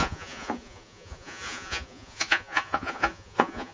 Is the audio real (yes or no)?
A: no